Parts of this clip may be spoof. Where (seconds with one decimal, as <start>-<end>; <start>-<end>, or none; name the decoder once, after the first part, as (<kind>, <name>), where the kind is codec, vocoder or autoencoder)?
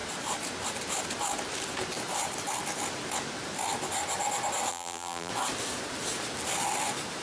4.7-5.3 (vocoder, BigVGAN v2)